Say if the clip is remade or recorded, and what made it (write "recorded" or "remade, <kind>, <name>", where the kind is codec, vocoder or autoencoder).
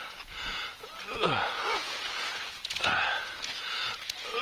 remade, vocoder, Vocos